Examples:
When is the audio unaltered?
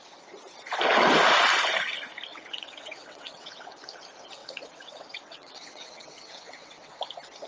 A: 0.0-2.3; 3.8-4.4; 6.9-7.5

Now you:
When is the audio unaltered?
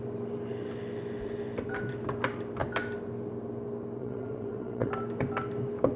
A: 0.0-4.0; 4.9-6.0